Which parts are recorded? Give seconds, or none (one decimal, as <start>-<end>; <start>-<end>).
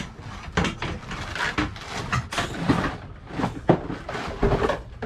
0.0-1.7; 3.1-5.1